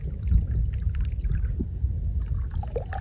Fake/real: real